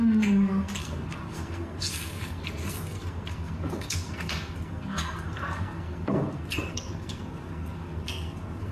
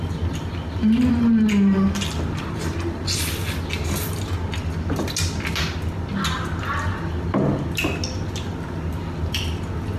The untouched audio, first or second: second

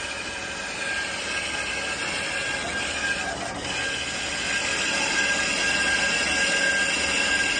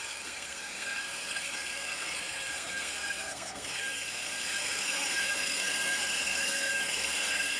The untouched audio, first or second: first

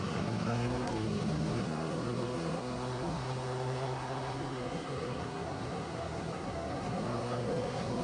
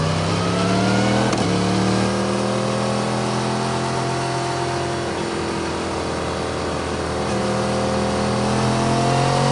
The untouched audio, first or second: second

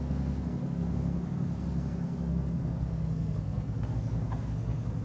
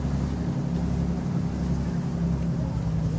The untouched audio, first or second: second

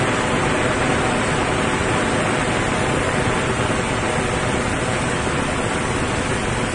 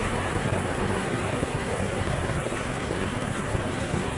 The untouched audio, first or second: first